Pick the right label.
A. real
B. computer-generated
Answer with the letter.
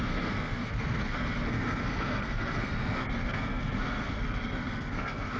B